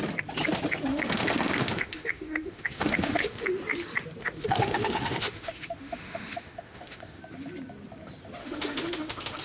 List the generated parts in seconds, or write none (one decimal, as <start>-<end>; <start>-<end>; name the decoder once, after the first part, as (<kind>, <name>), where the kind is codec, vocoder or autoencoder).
0.9-3.5 (autoencoder, DAC-VAE); 4.2-7.2; 8.4-9.4